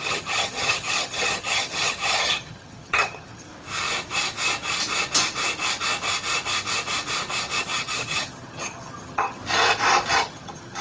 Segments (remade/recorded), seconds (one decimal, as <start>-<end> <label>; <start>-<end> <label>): 0.0-3.5 remade; 3.5-7.6 recorded; 7.6-9.4 remade; 9.4-10.1 recorded; 10.1-10.8 remade

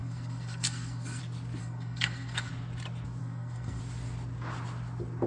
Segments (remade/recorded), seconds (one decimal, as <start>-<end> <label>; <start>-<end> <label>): 0.0-1.2 remade; 1.2-1.6 recorded; 1.6-2.5 remade; 2.5-3.2 recorded; 3.2-3.8 remade; 3.8-5.3 recorded

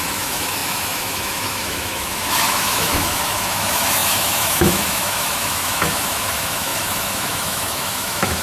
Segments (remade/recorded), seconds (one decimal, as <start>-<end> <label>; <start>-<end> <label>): 0.0-8.4 remade

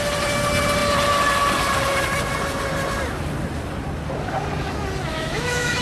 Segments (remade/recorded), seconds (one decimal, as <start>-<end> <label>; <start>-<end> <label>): 0.0-5.1 recorded; 5.1-5.8 remade

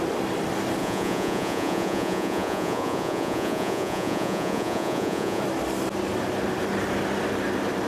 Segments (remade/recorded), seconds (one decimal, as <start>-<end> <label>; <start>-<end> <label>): 0.0-0.8 recorded; 0.8-5.4 remade; 5.4-7.9 recorded

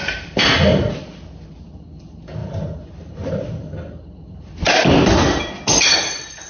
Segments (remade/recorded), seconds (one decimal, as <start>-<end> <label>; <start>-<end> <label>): 0.0-4.2 recorded; 4.2-5.6 remade; 5.6-6.5 recorded

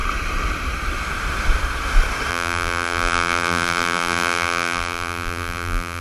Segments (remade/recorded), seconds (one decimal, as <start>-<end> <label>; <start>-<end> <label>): 0.0-2.3 recorded; 2.3-6.0 remade

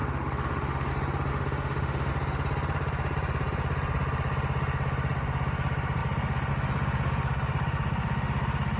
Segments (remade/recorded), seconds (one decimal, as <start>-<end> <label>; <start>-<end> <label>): 0.0-0.9 remade; 0.9-1.3 recorded; 1.3-2.1 remade; 2.1-8.8 recorded